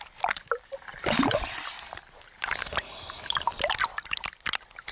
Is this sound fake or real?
fake